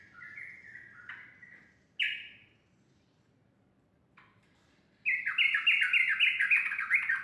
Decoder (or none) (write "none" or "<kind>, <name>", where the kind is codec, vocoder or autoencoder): none